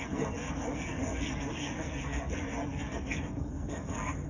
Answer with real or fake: fake